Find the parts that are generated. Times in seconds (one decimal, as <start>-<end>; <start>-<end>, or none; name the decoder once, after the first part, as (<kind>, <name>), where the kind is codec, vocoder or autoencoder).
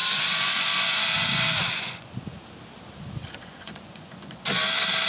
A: 0.0-2.1 (vocoder, Vocos); 3.4-4.5